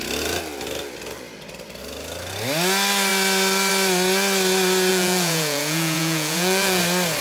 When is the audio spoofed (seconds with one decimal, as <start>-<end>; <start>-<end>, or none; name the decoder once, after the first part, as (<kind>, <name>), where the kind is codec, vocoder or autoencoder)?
4.9-6.8 (vocoder, Vocos)